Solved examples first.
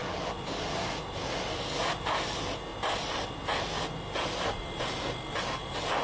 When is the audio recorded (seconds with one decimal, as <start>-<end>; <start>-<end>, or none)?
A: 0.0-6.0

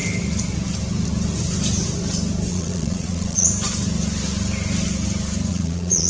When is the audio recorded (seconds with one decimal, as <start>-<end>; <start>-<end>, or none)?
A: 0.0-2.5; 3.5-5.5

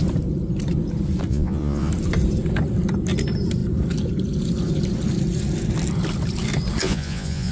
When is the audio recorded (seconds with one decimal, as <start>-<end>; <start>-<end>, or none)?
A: 0.0-1.3; 1.9-6.8

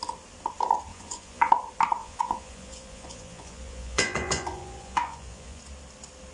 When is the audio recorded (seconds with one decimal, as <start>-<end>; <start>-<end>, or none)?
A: 0.0-0.9; 1.5-2.0; 5.6-6.3